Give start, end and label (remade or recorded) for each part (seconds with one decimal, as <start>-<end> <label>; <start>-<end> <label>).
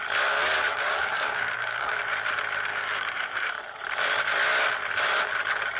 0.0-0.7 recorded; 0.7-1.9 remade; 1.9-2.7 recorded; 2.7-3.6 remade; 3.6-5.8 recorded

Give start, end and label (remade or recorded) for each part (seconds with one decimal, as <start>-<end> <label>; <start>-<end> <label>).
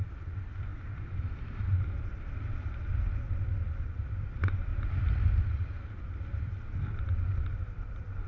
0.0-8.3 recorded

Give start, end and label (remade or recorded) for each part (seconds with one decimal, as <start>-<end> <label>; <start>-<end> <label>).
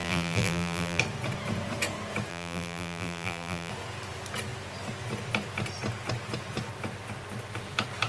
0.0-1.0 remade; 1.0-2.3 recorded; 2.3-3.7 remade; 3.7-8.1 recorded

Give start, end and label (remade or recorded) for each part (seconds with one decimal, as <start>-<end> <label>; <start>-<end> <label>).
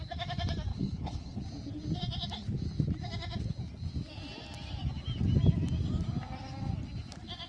0.0-0.7 recorded; 0.7-1.4 remade; 1.4-7.5 recorded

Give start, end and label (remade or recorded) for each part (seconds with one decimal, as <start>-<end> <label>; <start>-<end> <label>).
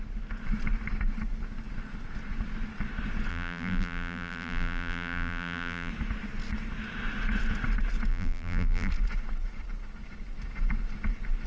0.0-3.3 recorded; 3.3-5.9 remade; 5.9-8.1 recorded; 8.1-8.9 remade; 8.9-11.5 recorded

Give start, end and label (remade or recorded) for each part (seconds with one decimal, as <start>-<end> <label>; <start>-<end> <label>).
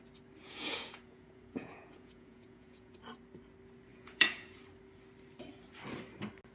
0.0-0.4 recorded; 0.4-3.0 remade; 3.0-3.9 recorded; 3.9-4.6 remade; 4.6-6.5 recorded